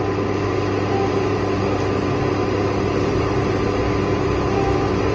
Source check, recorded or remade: recorded